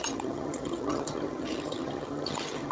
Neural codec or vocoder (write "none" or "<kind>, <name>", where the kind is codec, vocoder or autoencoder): vocoder, HiFi-GAN